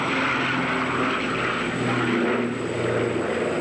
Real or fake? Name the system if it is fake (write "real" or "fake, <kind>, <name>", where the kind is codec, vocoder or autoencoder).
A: real